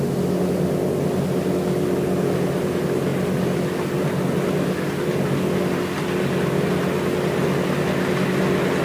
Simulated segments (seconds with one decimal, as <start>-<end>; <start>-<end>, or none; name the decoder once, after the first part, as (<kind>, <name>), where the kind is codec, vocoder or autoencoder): none